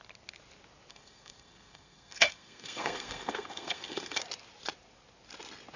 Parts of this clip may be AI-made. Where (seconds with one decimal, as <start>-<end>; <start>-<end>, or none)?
0.9-4.2

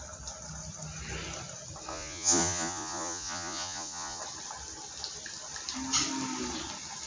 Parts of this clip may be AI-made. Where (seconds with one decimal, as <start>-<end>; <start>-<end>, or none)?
1.9-4.2